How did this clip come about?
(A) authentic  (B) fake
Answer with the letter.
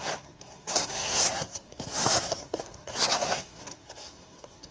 B